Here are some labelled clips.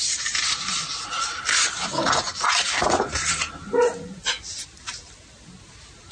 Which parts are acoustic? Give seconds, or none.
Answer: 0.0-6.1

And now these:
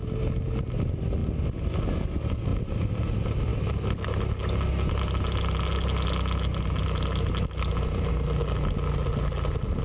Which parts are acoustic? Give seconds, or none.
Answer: 0.0-9.8

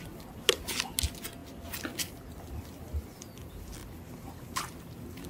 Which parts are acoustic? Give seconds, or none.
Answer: 0.0-5.3